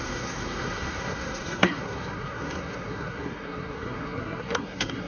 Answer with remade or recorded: remade